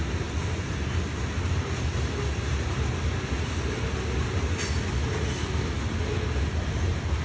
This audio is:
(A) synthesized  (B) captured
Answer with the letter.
B